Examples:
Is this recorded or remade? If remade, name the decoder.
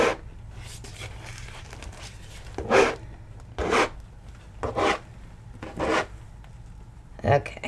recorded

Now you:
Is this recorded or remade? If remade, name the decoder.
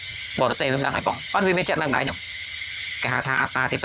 remade, vocoder, HiFi-GAN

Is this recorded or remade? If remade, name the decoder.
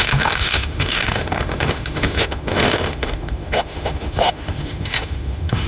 remade, autoencoder, DAC-VAE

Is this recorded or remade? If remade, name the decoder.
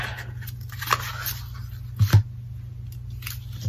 recorded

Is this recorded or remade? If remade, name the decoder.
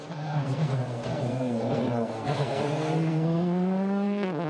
remade, codec, SNAC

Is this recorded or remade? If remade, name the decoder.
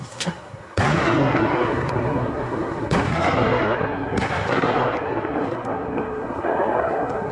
remade, codec, SNAC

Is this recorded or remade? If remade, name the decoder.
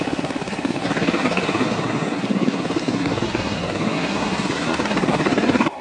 remade, codec, SNAC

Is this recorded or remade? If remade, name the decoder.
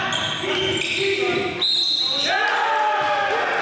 recorded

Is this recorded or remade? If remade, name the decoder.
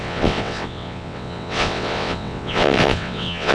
remade, vocoder, WaveNeXt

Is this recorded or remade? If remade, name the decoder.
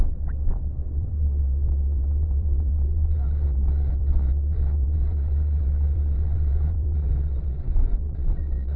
remade, vocoder, WaveNeXt